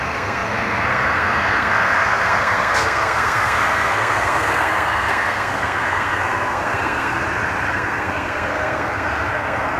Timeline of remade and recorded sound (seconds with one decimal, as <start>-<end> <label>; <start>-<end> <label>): 0.0-7.2 remade; 7.2-7.7 recorded; 7.7-9.8 remade